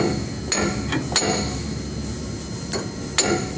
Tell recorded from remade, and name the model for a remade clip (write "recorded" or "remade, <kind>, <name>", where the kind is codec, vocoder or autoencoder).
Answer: recorded